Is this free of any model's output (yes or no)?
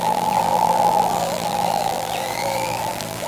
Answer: no